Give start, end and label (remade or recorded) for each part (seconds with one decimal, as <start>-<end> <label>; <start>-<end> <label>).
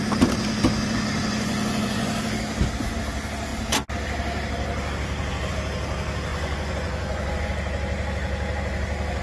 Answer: 0.0-1.2 recorded; 1.2-2.1 remade; 2.1-6.3 recorded; 6.3-7.5 remade; 7.5-9.2 recorded